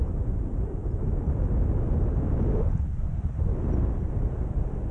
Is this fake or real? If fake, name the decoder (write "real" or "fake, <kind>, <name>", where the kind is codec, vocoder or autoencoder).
real